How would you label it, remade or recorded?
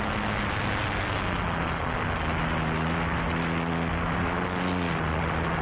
recorded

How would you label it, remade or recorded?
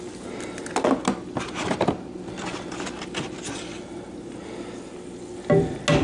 recorded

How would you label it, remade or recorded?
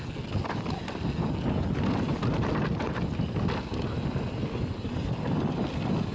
recorded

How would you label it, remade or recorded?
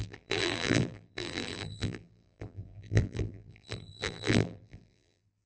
remade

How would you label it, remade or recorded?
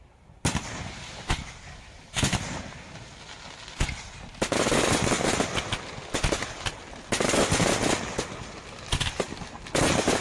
recorded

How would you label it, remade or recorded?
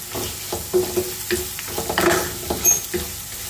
recorded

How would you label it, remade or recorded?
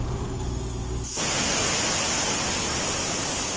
recorded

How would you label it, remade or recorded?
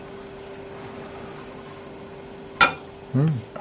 recorded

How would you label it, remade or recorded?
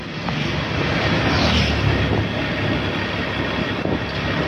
recorded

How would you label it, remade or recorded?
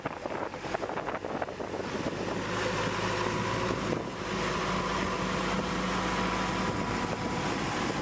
recorded